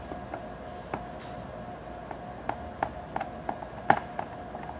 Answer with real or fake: real